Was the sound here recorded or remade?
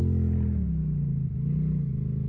recorded